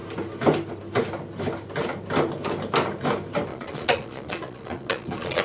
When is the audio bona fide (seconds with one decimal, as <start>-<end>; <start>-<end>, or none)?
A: 0.0-3.5

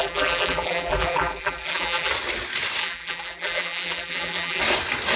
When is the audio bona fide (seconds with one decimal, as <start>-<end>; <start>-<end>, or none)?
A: 2.1-2.8; 4.6-5.2

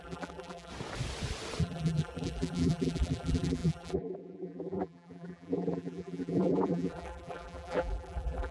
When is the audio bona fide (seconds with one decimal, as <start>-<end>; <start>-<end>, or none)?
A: 0.7-1.6